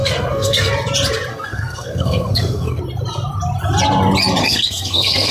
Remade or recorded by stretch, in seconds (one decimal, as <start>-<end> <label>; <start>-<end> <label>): 0.0-0.7 remade; 0.7-1.3 recorded; 1.3-2.8 remade; 2.8-4.4 recorded; 4.4-5.3 remade